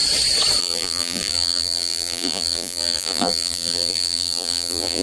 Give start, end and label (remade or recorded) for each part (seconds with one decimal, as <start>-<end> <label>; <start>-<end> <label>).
0.0-0.6 recorded; 0.6-5.0 remade